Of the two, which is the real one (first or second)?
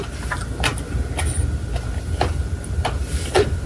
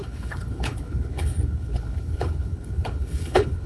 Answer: first